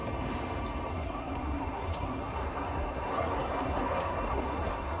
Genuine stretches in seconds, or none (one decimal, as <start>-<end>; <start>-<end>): 0.0-0.9